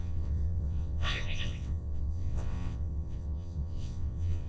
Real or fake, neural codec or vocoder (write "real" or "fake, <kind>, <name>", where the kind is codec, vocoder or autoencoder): fake, vocoder, WaveNeXt